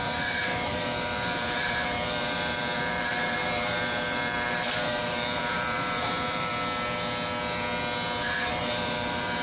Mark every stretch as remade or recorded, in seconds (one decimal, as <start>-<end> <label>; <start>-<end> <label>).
0.0-6.5 remade; 6.5-8.5 recorded; 8.5-9.4 remade